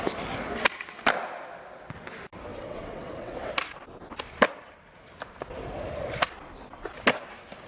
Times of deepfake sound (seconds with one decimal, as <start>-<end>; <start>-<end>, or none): 2.5-3.4